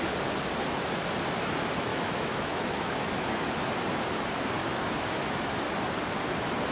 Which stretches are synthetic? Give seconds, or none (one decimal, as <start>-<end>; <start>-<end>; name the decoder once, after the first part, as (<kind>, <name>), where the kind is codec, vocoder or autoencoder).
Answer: 1.9-3.5 (autoencoder, DAC-VAE); 4.6-5.5